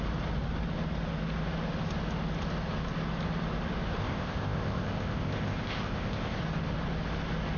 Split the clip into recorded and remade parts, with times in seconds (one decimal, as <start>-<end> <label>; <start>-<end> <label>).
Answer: 0.0-4.0 recorded; 4.0-6.4 remade; 6.4-7.6 recorded